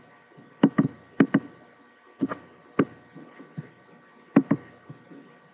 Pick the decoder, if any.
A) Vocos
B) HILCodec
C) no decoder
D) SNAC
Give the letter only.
C